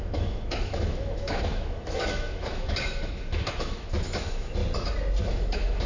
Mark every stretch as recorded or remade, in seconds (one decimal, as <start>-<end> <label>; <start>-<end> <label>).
0.0-4.6 remade; 4.6-5.2 recorded; 5.2-5.9 remade